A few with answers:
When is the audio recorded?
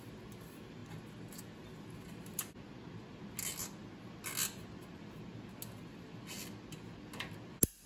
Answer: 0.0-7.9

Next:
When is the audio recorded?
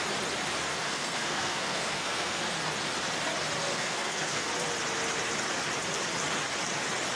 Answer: 0.0-0.7; 2.4-3.7; 4.5-7.2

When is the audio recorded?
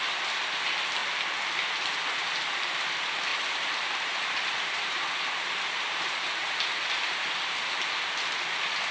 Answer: 0.0-3.3; 8.1-8.9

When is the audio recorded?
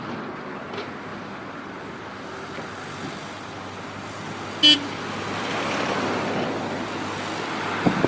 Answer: 0.0-8.1